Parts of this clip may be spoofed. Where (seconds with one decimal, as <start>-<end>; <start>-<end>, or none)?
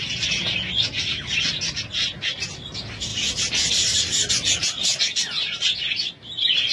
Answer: 3.1-4.3